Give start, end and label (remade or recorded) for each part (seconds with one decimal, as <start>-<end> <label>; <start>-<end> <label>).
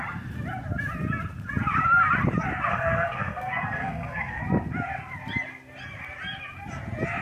0.0-2.7 recorded; 2.7-4.4 remade; 4.4-7.2 recorded